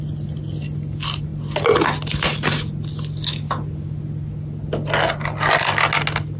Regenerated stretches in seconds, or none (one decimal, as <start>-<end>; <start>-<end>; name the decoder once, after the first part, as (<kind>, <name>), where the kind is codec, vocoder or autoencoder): none